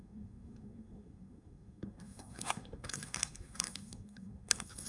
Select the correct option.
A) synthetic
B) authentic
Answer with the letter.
A